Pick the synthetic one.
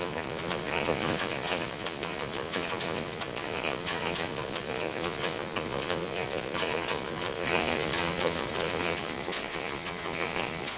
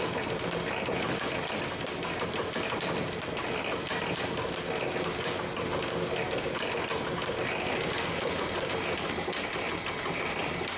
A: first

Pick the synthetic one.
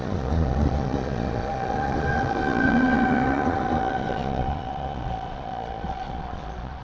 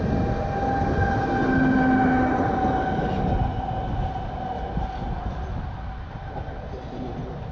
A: first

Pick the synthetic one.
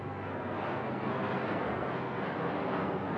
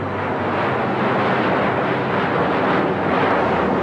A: first